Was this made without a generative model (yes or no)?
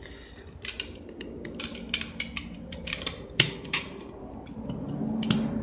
yes